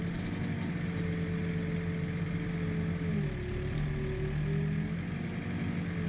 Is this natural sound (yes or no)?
yes